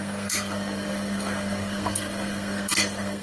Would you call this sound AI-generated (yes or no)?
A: yes